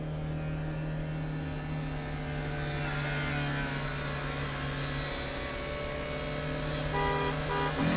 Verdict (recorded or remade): recorded